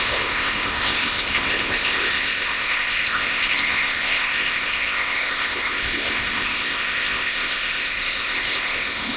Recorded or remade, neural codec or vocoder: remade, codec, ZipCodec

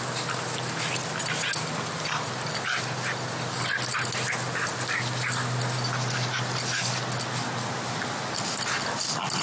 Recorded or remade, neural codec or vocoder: recorded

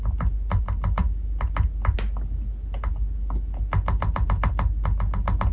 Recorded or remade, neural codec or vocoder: recorded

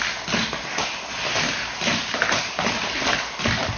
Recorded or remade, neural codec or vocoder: recorded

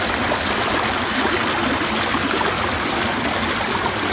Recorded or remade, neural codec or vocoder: recorded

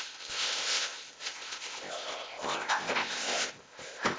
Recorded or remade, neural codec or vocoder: remade, codec, ZipCodec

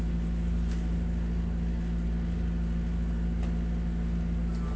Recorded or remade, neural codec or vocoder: recorded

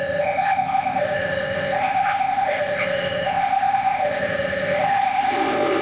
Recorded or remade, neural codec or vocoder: remade, codec, ZipCodec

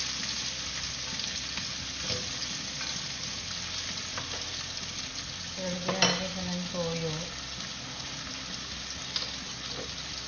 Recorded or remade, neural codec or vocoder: recorded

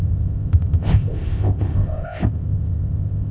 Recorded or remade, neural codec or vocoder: remade, codec, ZipCodec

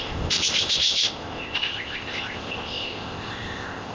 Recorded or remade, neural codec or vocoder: remade, codec, ZipCodec